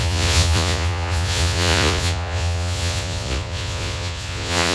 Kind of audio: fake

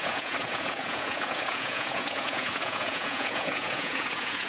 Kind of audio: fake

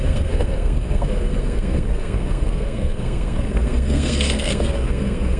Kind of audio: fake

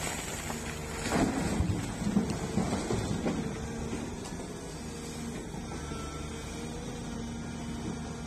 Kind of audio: real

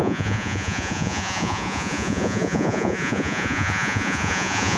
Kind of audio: fake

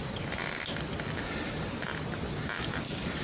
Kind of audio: real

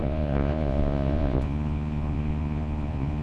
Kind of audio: fake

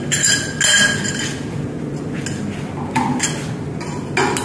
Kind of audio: real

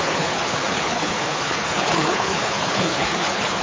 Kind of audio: fake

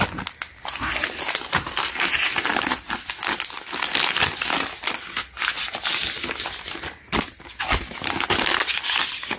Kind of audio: real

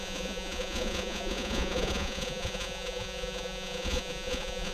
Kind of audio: fake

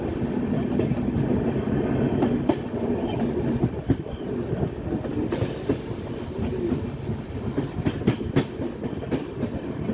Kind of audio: real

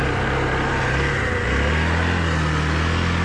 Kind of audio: real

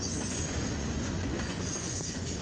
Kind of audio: fake